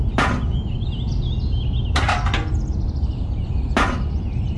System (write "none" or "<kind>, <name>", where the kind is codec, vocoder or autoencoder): none